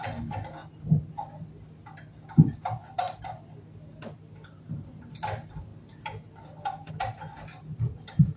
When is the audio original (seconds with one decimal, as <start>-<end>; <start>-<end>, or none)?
0.6-1.1; 5.7-6.9